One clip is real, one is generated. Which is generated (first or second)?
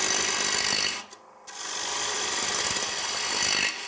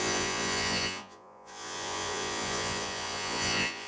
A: second